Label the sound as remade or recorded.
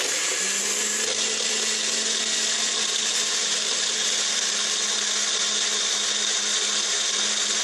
recorded